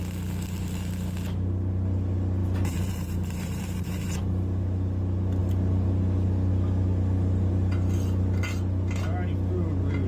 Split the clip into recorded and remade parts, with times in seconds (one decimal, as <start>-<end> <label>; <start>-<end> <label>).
0.0-2.4 recorded; 2.4-4.2 remade; 4.2-10.1 recorded

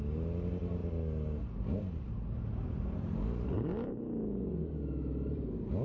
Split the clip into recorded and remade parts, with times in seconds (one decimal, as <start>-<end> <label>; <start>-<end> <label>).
0.0-5.8 recorded

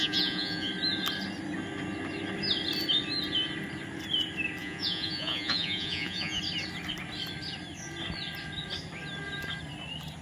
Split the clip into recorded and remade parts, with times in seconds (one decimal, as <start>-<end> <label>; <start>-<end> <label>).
0.0-0.7 remade; 0.7-4.6 recorded; 4.6-6.4 remade; 6.4-10.2 recorded

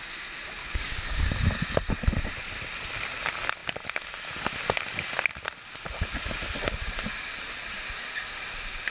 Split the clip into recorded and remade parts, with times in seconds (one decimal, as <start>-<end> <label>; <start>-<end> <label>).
0.0-0.6 recorded; 0.6-1.3 remade; 1.3-8.9 recorded